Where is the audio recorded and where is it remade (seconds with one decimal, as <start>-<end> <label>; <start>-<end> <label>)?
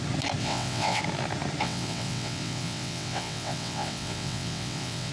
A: 0.0-0.4 recorded; 0.4-1.0 remade; 1.0-1.6 recorded; 1.6-5.1 remade